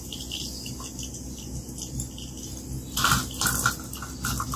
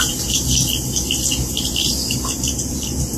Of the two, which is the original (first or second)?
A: first